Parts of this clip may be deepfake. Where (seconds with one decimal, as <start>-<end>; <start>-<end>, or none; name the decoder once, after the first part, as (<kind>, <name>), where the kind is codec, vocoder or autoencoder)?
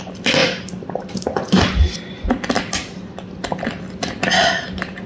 none